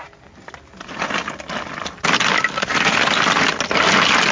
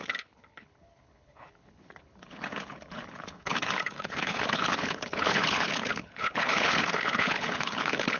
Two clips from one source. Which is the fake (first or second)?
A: second